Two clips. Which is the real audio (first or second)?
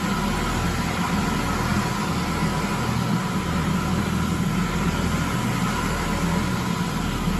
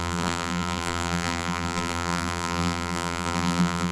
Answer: first